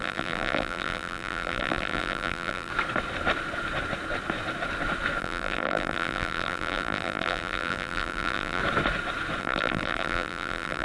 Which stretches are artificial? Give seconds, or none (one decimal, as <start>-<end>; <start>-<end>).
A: 0.0-2.7; 5.2-8.6; 9.4-10.8